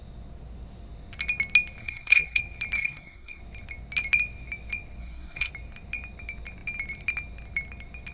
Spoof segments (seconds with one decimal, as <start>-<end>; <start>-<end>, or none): 1.8-2.4; 2.8-3.4; 5.0-5.5

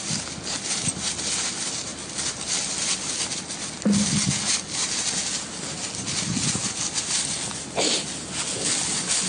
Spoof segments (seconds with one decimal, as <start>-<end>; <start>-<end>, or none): none

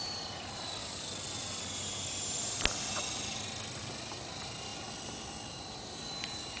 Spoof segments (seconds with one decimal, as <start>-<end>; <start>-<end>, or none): none

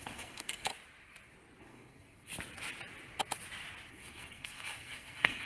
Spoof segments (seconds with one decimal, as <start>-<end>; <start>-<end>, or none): 0.0-0.7; 1.6-2.3; 3.9-5.5

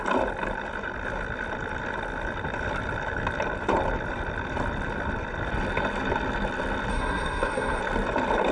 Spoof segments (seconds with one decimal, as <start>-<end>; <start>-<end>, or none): 6.9-7.8

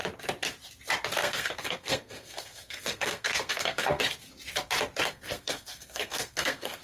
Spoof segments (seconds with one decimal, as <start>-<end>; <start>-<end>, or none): 1.2-4.0; 5.1-6.8